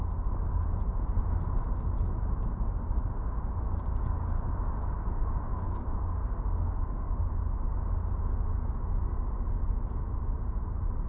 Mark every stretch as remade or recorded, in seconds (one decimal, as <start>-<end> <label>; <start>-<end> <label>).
0.0-5.5 recorded; 5.5-7.3 remade; 7.3-11.1 recorded